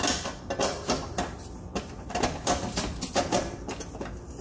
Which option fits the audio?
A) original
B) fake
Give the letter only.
A